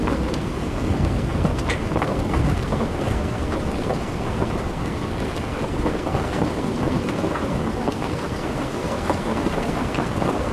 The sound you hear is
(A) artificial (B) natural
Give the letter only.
A